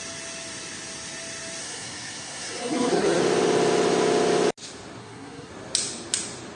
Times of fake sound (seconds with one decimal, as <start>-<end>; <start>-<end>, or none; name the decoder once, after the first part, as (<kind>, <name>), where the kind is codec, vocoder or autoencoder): 1.6-3.2 (codec, SNAC); 5.0-5.5